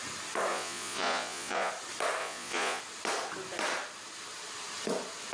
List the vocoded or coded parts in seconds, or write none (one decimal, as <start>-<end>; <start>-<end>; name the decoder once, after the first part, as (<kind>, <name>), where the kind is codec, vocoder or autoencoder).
0.5-1.7 (vocoder, Vocos); 2.2-2.8